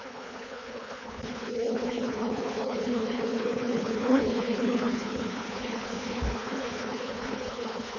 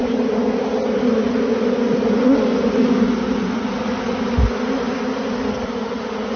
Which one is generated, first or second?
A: first